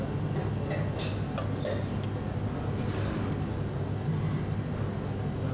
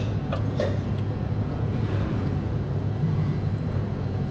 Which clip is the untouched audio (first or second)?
first